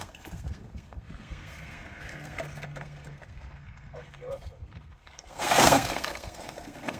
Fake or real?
fake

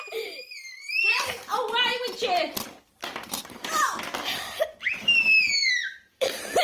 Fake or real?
fake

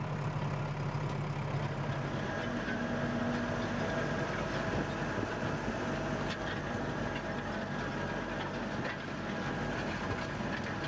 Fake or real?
real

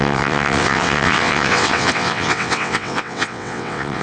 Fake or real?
fake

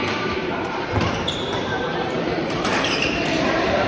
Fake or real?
fake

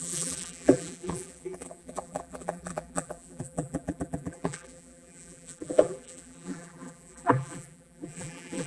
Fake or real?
fake